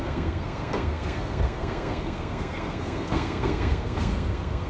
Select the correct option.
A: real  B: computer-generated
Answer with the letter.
B